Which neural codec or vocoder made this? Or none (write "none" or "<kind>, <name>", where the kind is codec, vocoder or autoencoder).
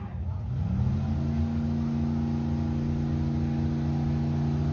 none